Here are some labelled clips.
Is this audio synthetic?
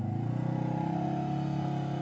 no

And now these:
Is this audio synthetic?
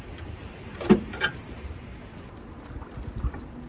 no